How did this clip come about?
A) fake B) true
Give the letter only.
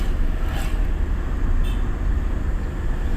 B